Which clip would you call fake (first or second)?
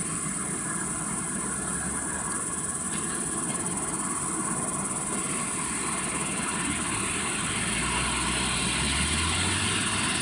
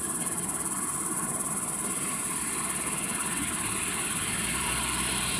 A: second